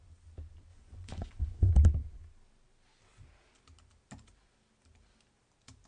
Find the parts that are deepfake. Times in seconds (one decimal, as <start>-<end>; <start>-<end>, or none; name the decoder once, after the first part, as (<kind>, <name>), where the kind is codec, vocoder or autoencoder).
0.7-1.7 (vocoder, Vocos)